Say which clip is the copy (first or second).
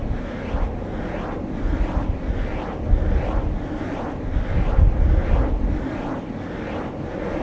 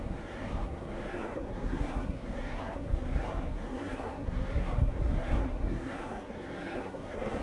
second